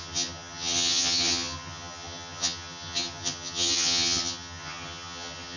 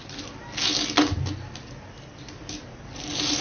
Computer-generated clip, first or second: first